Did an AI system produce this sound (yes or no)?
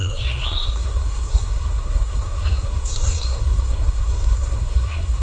yes